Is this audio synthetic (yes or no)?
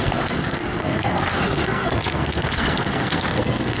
yes